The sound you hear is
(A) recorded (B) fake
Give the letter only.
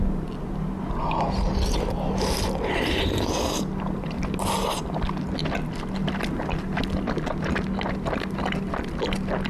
A